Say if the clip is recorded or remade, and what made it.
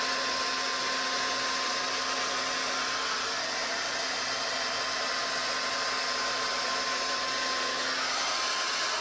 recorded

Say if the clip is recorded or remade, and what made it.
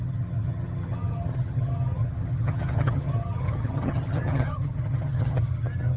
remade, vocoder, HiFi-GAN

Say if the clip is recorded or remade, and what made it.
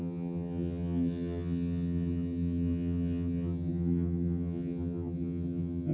remade, vocoder, HiFi-GAN